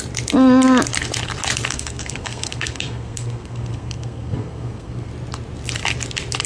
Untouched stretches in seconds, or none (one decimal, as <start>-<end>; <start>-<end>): 0.0-1.7; 5.1-6.5